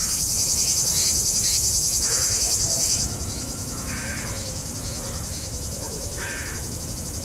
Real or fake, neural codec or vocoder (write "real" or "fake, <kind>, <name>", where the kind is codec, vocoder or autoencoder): fake, autoencoder, DAC-VAE